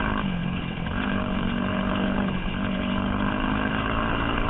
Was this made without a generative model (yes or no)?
no